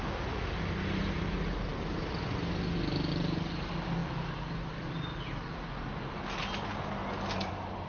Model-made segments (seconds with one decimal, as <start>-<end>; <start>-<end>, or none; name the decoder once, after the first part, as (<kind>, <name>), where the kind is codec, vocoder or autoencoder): none